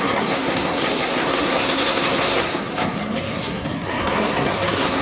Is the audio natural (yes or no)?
no